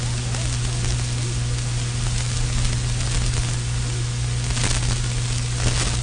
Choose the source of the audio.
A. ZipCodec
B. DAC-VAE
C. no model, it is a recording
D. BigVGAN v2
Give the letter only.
C